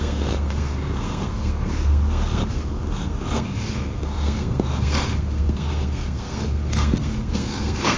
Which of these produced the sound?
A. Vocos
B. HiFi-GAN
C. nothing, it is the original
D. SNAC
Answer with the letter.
D